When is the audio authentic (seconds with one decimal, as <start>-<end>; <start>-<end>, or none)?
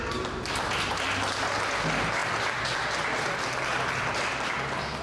0.0-5.0